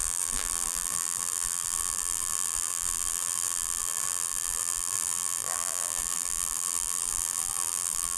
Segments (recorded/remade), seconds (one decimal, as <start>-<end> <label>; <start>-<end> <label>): 0.0-8.2 remade